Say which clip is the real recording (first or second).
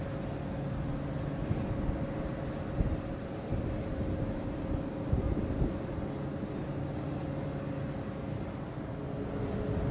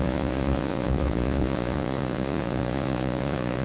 first